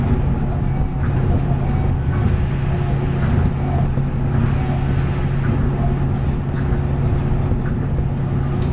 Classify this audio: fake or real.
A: real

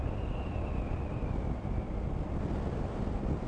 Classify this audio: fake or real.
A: real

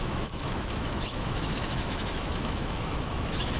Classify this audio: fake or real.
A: fake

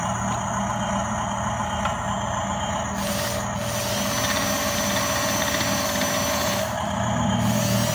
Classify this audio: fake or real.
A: real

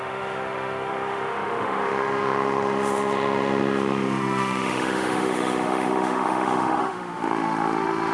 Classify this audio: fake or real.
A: fake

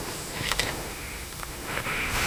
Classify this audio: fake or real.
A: fake